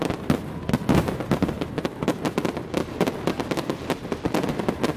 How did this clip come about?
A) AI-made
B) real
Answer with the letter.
B